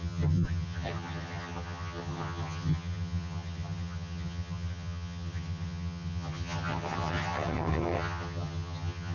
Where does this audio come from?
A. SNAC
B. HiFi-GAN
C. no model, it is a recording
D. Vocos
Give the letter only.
B